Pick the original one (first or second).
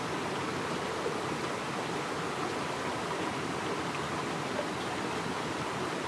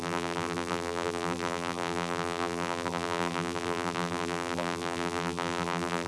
first